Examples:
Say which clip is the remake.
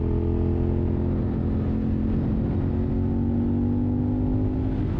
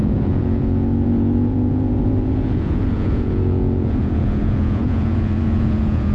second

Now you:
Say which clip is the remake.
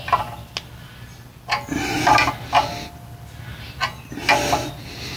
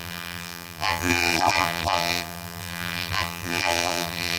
second